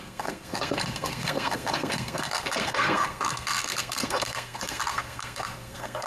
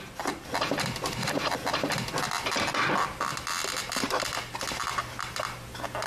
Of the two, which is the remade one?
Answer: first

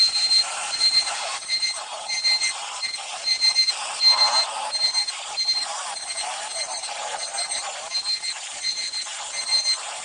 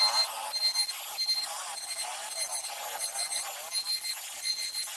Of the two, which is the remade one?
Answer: first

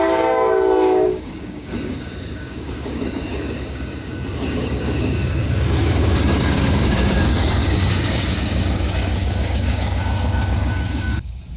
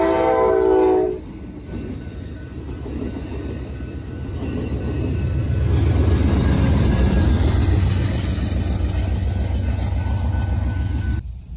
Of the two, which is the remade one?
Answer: first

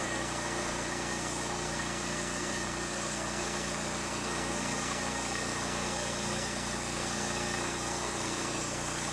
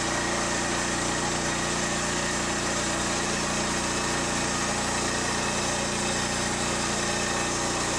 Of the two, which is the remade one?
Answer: first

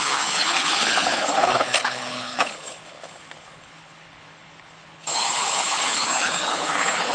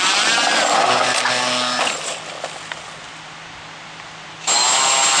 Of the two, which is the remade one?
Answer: first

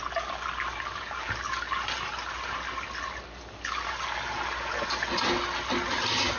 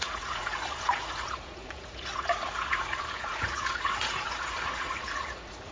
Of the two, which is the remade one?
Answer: second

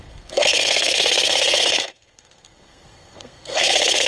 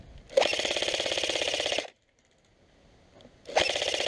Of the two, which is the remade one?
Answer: first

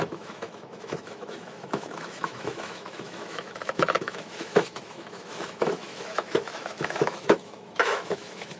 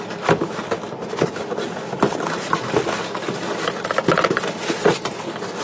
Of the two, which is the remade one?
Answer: first